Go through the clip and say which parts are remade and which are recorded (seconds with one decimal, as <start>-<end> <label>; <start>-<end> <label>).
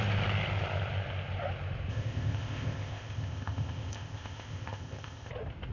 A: 0.0-1.9 recorded; 1.9-5.3 remade; 5.3-5.7 recorded